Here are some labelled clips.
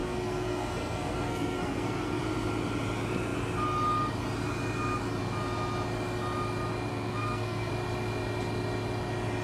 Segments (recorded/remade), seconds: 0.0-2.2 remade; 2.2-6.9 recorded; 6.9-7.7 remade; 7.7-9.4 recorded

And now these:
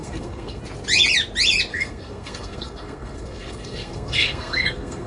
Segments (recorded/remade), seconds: 0.0-0.6 remade; 0.6-1.7 recorded; 1.7-5.1 remade

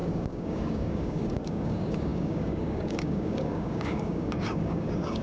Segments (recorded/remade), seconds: 0.0-5.2 remade

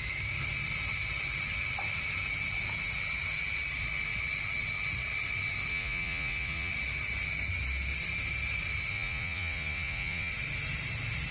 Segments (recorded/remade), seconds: 0.0-5.7 recorded; 5.7-6.7 remade; 6.7-8.9 recorded; 8.9-10.3 remade; 10.3-11.3 recorded